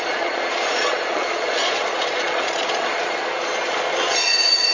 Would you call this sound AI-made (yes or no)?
yes